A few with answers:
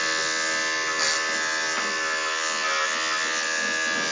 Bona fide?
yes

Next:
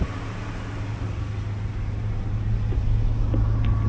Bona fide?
yes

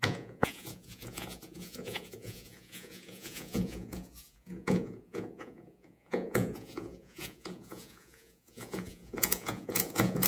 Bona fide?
no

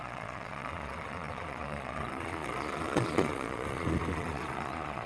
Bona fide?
no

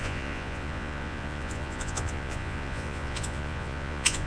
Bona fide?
no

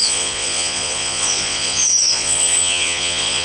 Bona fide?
no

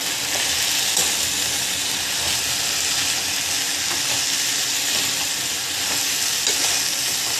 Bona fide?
yes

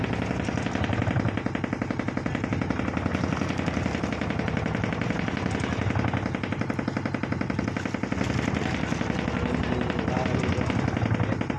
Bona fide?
yes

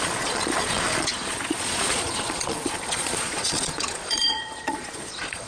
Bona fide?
no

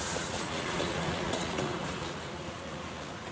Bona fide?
no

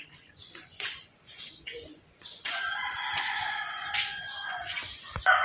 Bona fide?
no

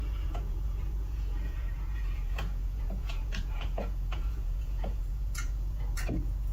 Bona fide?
no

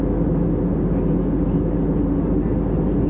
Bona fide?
yes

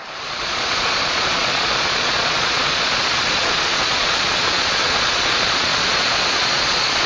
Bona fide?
no